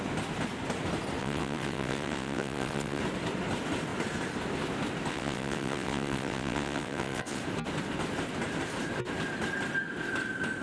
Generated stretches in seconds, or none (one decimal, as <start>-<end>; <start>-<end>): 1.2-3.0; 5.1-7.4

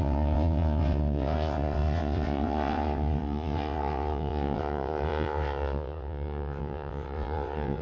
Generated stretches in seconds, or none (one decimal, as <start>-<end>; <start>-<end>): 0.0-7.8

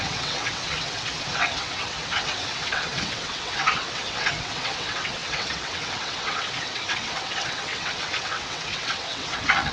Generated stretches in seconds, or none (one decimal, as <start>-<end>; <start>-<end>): 0.0-9.7

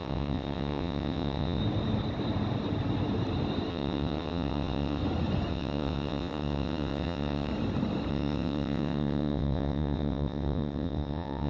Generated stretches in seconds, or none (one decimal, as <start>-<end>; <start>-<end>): 0.0-1.6; 3.7-5.0; 5.5-7.5; 8.1-11.5

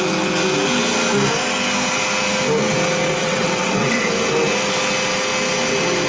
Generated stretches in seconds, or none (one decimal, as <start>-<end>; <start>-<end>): 3.2-4.1

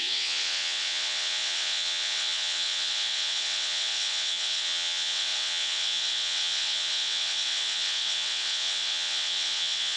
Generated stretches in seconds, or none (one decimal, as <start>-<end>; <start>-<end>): 0.0-10.0

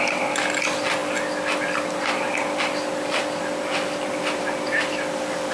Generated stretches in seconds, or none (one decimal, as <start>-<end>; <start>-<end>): none